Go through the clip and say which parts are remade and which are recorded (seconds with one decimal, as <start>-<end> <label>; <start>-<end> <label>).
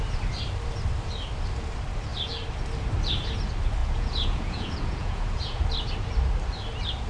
0.0-3.8 recorded; 3.8-5.7 remade; 5.7-7.1 recorded